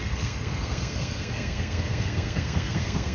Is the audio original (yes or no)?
no